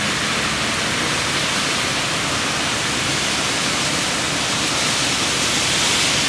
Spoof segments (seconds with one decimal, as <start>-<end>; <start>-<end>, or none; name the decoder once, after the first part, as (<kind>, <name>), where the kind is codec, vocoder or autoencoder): none